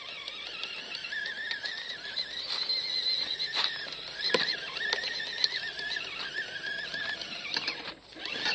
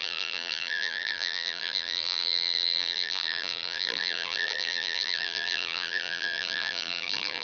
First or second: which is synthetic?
second